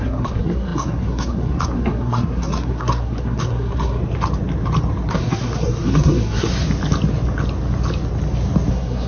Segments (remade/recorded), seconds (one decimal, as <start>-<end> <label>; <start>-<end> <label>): 0.0-4.0 remade; 4.0-5.1 recorded; 5.1-6.5 remade; 6.5-8.7 recorded; 8.7-9.1 remade